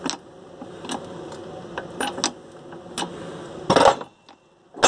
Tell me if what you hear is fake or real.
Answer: real